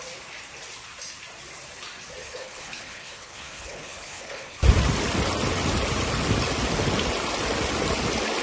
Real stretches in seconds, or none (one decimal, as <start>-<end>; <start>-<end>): 0.0-2.2; 4.6-8.4